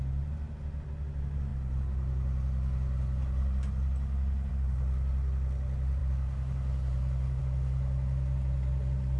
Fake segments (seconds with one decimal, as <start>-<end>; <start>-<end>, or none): none